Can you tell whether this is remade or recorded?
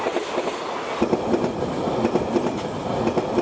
recorded